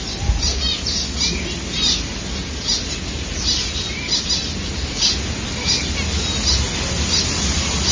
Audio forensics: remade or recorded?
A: recorded